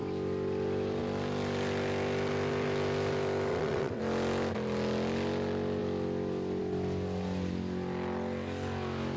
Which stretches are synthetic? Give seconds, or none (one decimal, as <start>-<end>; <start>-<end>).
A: 3.5-4.0